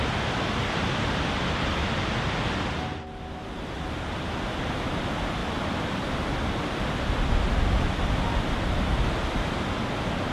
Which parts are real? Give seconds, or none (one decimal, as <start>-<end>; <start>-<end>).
0.0-10.3